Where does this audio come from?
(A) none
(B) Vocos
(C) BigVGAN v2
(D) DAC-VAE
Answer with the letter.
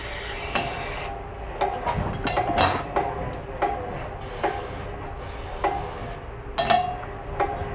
A